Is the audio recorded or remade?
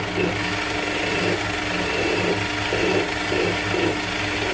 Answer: recorded